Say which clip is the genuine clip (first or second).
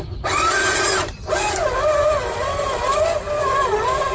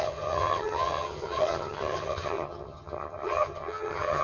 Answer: first